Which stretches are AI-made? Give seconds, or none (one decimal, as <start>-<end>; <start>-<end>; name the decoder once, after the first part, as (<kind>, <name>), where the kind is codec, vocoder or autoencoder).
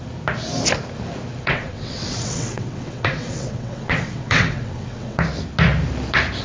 1.4-5.2 (vocoder, WaveNeXt)